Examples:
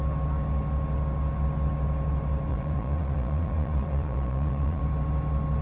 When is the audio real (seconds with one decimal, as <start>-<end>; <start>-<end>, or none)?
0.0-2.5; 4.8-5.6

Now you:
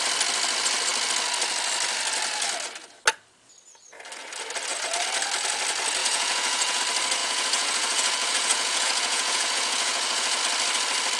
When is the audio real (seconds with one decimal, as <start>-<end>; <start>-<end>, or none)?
0.0-6.0; 6.8-7.2; 10.4-11.2

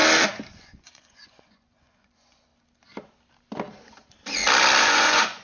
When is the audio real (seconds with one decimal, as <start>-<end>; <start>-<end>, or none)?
0.0-0.5; 2.5-4.8

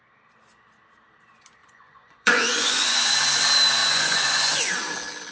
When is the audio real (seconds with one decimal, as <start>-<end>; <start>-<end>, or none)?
0.0-1.6; 3.4-3.8; 4.7-5.3

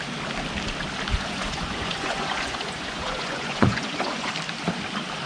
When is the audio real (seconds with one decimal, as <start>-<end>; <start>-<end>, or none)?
0.0-1.1; 4.3-5.3

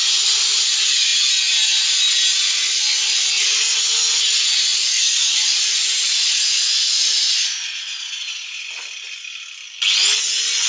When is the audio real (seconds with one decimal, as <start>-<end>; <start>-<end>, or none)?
0.0-4.7; 8.6-10.7